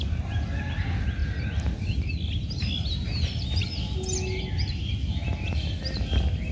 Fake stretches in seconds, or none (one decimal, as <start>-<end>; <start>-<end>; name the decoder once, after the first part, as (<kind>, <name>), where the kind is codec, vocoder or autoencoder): none